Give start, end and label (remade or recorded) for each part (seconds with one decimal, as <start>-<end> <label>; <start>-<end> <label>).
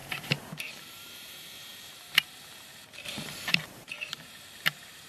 0.0-5.1 remade